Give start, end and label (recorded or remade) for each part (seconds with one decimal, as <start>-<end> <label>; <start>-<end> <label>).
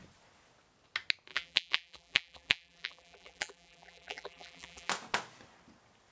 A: 0.0-1.3 recorded; 1.3-4.9 remade; 4.9-6.1 recorded